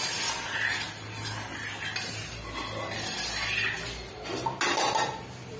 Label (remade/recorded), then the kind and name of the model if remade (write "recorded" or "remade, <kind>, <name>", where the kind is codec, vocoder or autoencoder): recorded